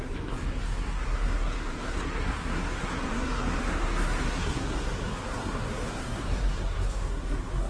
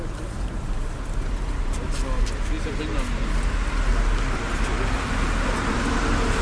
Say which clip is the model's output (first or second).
first